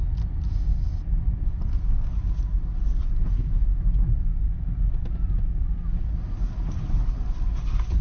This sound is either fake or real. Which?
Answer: real